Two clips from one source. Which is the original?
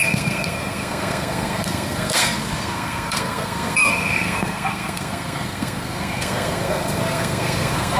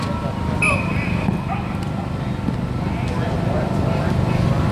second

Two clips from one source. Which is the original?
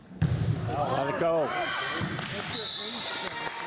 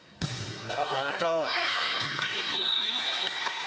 first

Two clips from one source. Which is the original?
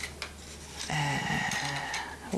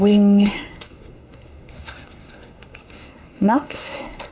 first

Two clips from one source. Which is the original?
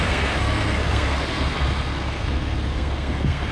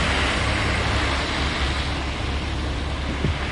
second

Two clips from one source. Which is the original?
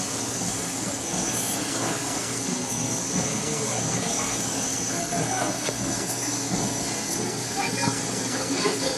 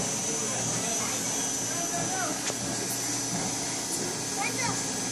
second